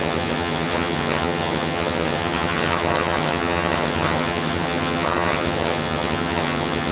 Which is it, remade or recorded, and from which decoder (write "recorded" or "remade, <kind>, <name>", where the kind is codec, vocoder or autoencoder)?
remade, vocoder, HiFi-GAN